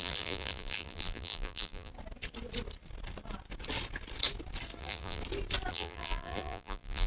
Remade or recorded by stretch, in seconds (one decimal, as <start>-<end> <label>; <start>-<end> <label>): 0.0-1.9 remade; 1.9-4.8 recorded; 4.8-5.2 remade; 5.2-5.7 recorded; 5.7-7.1 remade